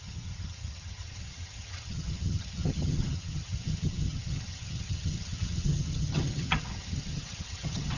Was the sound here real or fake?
fake